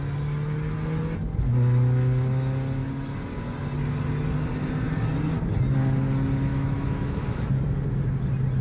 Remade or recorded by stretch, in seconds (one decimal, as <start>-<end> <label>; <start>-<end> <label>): 0.0-6.5 recorded; 6.5-7.4 remade; 7.4-8.6 recorded